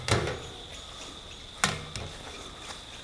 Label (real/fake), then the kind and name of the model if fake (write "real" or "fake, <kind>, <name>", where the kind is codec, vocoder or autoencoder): real